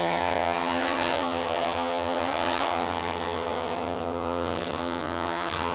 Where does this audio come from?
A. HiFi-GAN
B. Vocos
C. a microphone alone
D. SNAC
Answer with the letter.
A